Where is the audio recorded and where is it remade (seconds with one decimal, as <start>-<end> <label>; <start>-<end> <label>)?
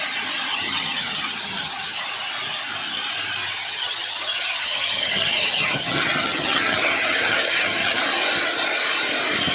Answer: 0.0-0.5 recorded; 0.5-2.0 remade; 2.0-3.6 recorded; 3.6-8.0 remade; 8.0-9.5 recorded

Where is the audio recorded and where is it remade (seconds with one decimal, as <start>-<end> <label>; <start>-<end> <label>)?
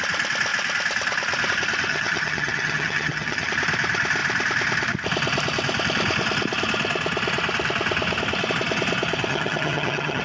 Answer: 0.0-1.9 recorded; 1.9-3.5 remade; 3.5-9.3 recorded; 9.3-10.2 remade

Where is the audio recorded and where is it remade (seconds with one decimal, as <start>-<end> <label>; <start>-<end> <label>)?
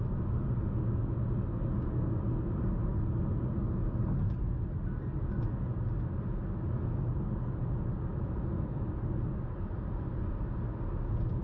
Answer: 0.0-11.4 recorded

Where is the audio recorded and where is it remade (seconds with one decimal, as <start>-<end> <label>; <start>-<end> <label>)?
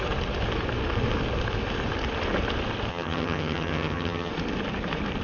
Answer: 0.0-2.9 recorded; 2.9-4.3 remade; 4.3-5.2 recorded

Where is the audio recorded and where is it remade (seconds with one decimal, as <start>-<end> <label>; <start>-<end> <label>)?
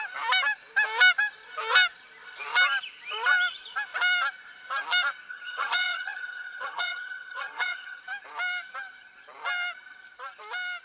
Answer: 0.0-5.3 recorded; 5.3-8.0 remade; 8.0-10.8 recorded